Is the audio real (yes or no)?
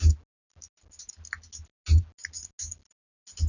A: yes